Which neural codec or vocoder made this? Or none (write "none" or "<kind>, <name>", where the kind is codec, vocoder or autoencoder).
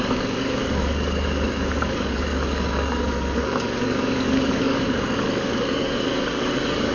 codec, DAC